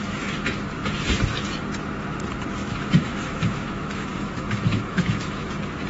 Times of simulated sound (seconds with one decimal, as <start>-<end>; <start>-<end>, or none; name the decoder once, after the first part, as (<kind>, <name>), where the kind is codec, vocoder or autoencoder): 2.6-5.5 (autoencoder, DAC-VAE)